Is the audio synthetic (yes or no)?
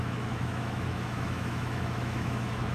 yes